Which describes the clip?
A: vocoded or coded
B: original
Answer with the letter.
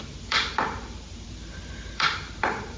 A